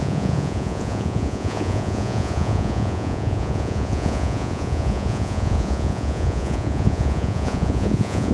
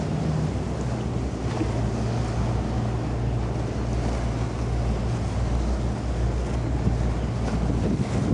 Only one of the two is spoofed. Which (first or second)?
first